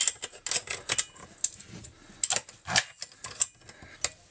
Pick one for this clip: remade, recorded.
recorded